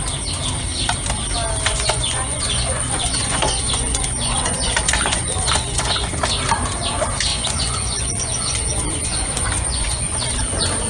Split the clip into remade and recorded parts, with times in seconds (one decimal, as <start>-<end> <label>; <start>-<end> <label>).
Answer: 0.0-1.7 recorded; 1.7-6.1 remade; 6.1-7.3 recorded; 7.3-10.4 remade; 10.4-10.9 recorded